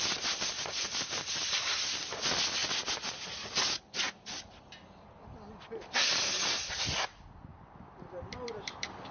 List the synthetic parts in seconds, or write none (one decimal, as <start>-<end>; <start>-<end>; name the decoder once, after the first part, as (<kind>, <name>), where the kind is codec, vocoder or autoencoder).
0.0-2.6 (vocoder, BigVGAN v2); 5.5-9.1